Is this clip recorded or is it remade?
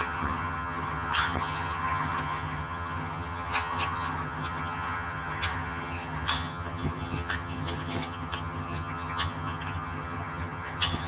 remade